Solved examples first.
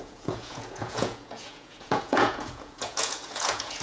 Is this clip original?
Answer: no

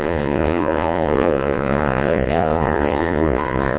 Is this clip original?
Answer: no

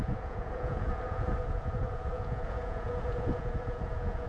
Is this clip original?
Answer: no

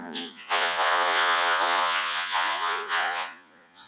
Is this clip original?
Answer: no